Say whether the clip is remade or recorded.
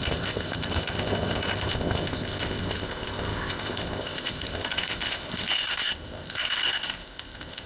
remade